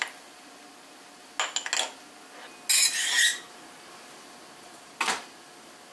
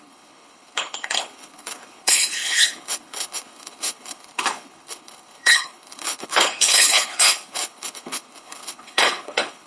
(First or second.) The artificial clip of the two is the second